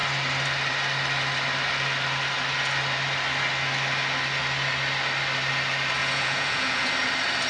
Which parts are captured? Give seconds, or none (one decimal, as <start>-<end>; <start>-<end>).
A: 0.0-6.0; 6.9-7.5